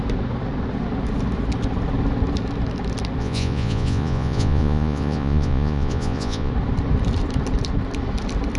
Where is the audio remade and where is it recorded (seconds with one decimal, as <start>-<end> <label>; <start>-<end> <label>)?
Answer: 0.0-3.2 recorded; 3.2-6.5 remade; 6.5-8.6 recorded